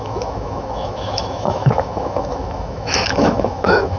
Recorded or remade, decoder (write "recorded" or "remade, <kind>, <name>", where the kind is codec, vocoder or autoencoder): remade, autoencoder, DAC-VAE